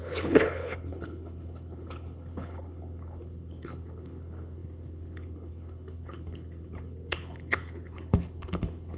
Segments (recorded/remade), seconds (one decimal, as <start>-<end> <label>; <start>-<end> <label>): 0.0-9.0 remade